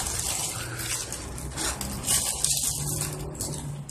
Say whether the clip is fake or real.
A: real